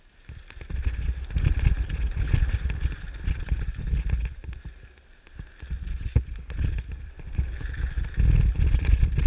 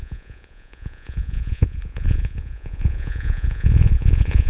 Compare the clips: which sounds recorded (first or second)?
first